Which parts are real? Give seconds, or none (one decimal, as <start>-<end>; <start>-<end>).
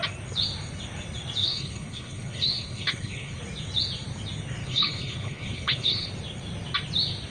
0.0-1.4; 3.4-4.6; 6.1-7.3